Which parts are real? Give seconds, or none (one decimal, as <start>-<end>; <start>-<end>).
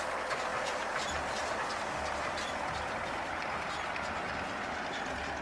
0.0-5.4